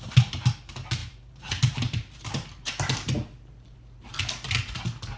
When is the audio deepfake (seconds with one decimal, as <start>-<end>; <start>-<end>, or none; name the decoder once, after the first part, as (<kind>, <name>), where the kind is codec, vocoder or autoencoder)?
1.0-4.1 (vocoder, BigVGAN v2)